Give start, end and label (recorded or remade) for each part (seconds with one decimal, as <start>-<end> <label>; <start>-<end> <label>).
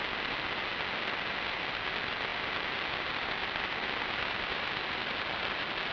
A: 0.0-5.9 recorded